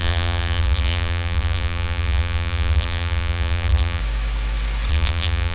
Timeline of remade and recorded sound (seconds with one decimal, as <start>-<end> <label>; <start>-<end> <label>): 0.0-4.0 remade; 4.0-4.9 recorded; 4.9-5.5 remade